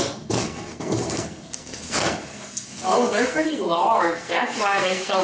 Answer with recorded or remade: remade